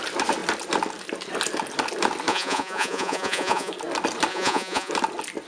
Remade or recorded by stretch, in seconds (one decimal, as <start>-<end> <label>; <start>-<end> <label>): 0.0-2.3 recorded; 2.3-3.7 remade; 3.7-4.3 recorded; 4.3-4.9 remade; 4.9-5.5 recorded